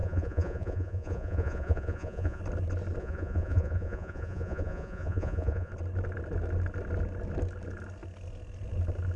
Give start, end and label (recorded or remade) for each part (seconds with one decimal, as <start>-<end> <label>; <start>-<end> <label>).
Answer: 0.0-2.4 remade; 2.4-3.0 recorded; 3.0-5.7 remade; 5.7-9.2 recorded